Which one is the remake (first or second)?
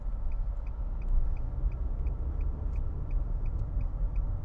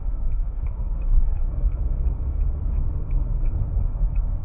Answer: second